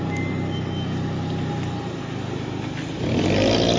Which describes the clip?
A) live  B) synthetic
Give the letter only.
A